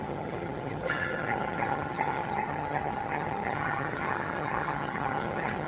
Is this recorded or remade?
remade